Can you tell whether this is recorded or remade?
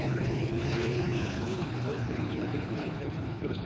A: remade